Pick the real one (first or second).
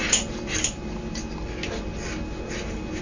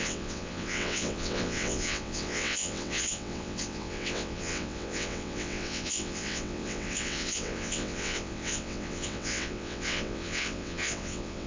first